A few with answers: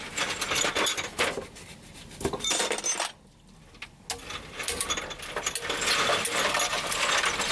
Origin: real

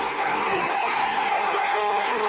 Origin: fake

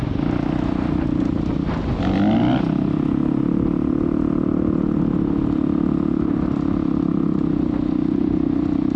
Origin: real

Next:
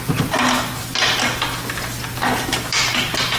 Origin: real